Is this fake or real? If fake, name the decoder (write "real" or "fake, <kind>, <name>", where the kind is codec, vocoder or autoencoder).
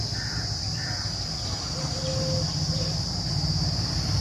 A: real